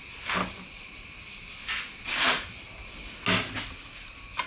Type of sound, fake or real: real